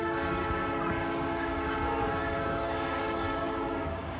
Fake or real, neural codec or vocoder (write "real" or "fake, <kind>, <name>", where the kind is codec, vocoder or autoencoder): fake, codec, DAC